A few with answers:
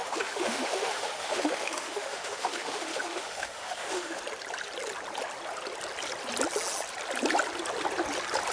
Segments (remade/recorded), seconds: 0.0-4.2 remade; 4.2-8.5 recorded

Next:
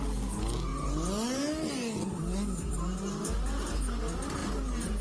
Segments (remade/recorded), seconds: 0.0-5.0 recorded

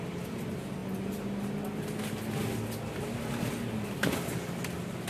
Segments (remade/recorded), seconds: 0.0-5.1 recorded

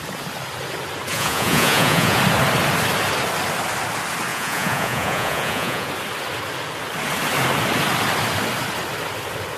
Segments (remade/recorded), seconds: 0.0-1.1 recorded; 1.1-2.2 remade; 2.2-4.3 recorded; 4.3-5.9 remade; 5.9-9.6 recorded

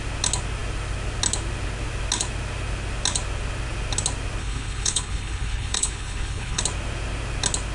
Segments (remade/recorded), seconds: 0.0-4.4 recorded; 4.4-6.6 remade; 6.6-7.7 recorded